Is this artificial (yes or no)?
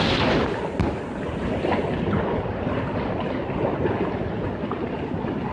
no